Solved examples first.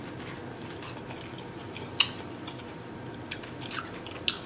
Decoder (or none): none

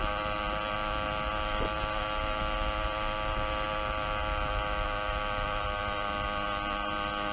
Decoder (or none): none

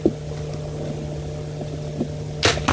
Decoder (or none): none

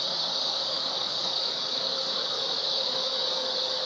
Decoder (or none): codec, DAC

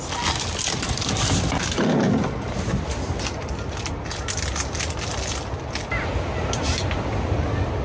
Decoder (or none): none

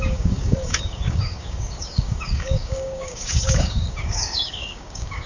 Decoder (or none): codec, DAC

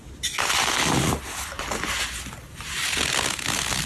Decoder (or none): none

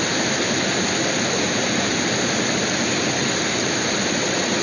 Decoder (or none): none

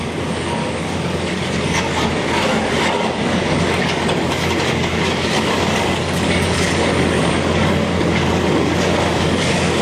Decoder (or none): codec, DAC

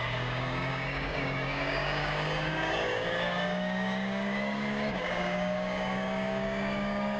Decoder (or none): codec, DAC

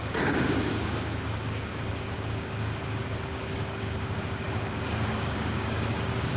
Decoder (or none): codec, DAC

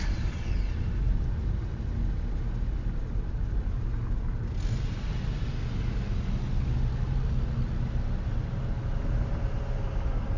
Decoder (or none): none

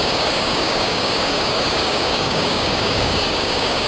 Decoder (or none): codec, DAC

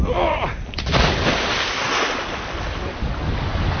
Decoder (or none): none